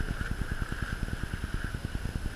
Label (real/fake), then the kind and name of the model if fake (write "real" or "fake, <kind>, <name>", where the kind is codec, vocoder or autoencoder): real